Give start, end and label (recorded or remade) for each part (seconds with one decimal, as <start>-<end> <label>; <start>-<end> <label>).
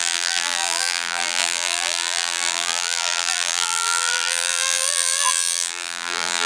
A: 0.0-6.5 remade